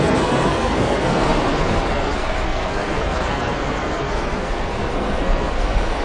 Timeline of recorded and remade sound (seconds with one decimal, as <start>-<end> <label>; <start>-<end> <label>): 0.0-6.0 remade